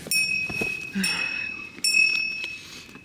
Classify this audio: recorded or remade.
recorded